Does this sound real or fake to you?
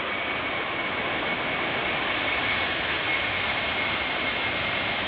real